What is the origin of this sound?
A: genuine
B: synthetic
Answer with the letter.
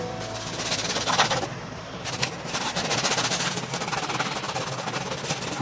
B